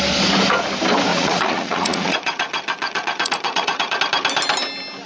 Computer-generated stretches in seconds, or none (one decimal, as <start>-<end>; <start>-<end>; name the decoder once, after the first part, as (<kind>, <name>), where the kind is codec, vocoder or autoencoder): 1.1-4.0 (vocoder, Vocos)